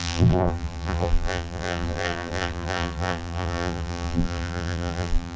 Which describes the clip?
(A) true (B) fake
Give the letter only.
B